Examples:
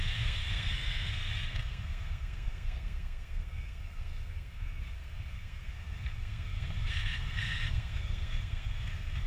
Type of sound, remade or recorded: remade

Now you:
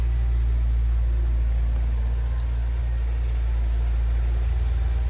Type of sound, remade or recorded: recorded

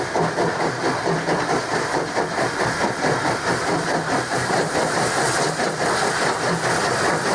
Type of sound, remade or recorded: recorded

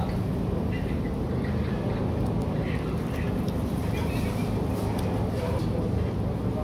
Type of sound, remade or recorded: recorded